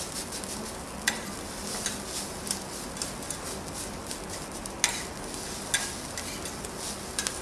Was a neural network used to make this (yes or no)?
no